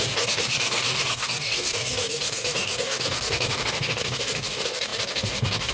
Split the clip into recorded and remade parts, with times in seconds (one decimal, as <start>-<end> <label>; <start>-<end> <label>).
0.0-5.7 remade

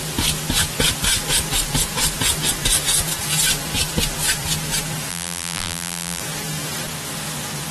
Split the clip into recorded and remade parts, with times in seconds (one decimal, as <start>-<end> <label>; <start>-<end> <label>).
0.0-5.1 recorded; 5.1-6.2 remade; 6.2-7.7 recorded